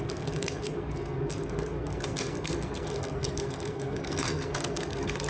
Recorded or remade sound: remade